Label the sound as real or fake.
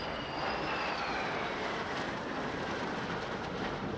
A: real